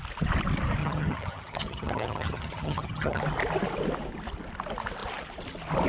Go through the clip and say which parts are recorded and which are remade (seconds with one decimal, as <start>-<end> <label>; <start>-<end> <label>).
0.0-0.8 recorded; 0.8-3.2 remade; 3.2-5.9 recorded